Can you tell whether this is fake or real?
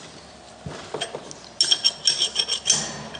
real